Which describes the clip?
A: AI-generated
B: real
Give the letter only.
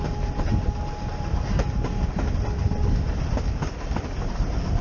B